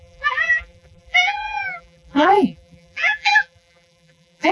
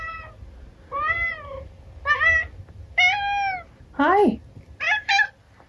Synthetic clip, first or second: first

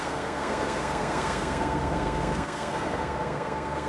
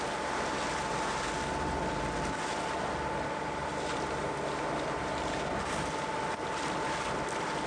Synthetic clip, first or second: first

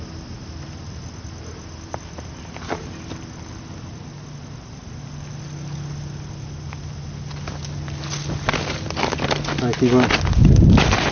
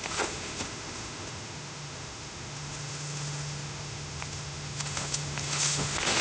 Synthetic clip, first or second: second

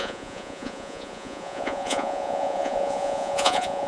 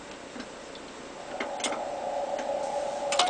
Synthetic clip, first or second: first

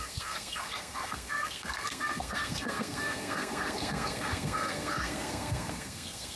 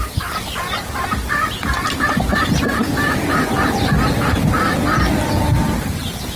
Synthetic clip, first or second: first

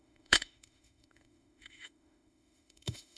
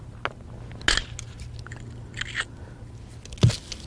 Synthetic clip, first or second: first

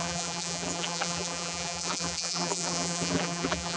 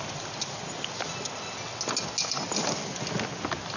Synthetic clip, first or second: first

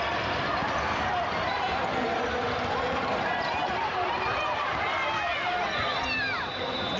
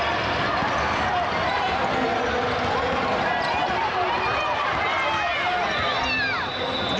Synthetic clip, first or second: first